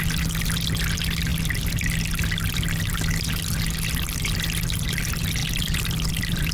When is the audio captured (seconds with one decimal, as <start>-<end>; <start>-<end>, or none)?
0.0-5.4